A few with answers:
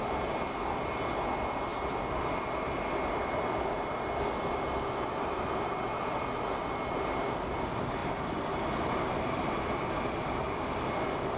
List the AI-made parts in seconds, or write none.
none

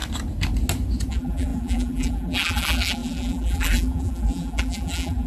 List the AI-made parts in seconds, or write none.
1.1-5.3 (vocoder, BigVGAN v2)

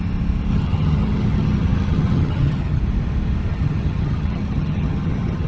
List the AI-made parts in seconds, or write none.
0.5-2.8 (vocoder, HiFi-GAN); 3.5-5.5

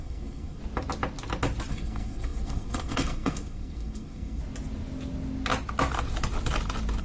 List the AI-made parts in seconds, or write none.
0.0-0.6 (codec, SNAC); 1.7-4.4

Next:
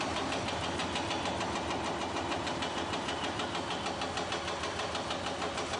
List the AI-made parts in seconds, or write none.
none

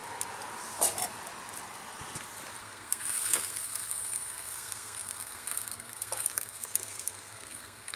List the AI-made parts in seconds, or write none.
2.6-8.0 (codec, SNAC)